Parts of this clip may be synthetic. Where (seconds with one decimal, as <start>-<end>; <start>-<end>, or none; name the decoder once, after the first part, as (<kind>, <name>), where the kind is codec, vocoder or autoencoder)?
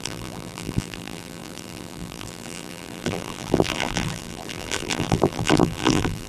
0.0-6.3 (vocoder, BigVGAN v2)